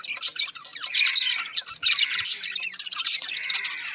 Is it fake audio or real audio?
real